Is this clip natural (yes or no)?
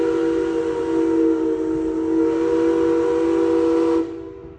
yes